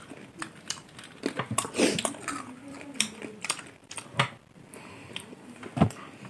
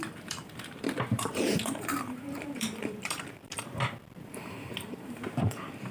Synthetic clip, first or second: second